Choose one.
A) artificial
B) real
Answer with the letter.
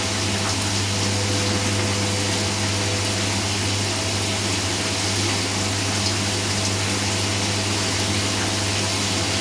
B